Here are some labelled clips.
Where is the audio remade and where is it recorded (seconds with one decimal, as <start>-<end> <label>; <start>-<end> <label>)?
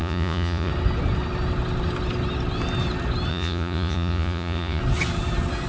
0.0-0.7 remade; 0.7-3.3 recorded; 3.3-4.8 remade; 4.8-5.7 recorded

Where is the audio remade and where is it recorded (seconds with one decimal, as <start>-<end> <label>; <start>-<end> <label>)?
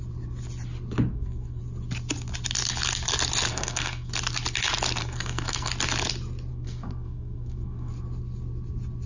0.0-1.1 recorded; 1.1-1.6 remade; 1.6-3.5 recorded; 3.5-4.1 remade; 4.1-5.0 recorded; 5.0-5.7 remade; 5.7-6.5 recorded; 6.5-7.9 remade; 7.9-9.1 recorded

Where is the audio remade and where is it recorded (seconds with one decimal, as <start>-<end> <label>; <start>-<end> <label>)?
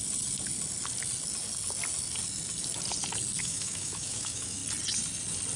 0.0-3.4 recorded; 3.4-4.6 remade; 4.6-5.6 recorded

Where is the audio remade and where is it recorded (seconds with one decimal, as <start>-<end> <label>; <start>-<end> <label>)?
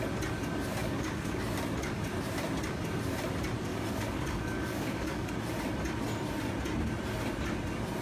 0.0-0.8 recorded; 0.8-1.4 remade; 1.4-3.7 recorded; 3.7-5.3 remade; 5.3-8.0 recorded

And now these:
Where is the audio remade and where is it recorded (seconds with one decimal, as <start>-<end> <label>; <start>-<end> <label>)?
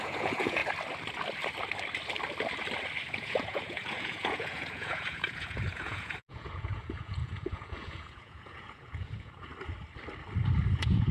0.0-0.6 remade; 0.6-3.1 recorded; 3.1-9.5 remade; 9.5-10.7 recorded; 10.7-11.1 remade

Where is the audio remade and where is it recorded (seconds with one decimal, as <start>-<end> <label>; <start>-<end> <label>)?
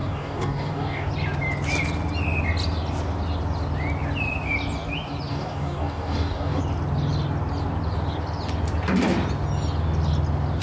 0.0-1.1 remade; 1.1-5.3 recorded; 5.3-6.6 remade; 6.6-10.6 recorded